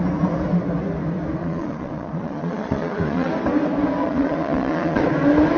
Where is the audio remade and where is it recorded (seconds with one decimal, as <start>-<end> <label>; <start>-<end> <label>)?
0.0-1.4 recorded; 1.4-3.3 remade; 3.3-4.0 recorded; 4.0-5.0 remade; 5.0-5.6 recorded